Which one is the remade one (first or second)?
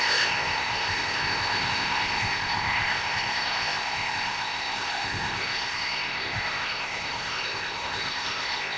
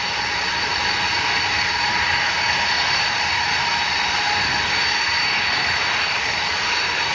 first